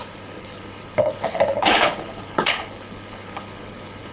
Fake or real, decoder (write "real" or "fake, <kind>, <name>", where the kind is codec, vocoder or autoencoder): fake, codec, HILCodec